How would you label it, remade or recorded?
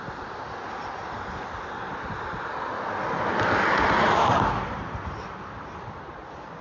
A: recorded